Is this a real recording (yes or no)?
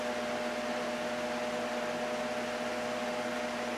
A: yes